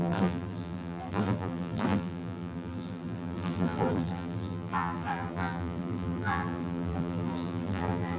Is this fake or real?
fake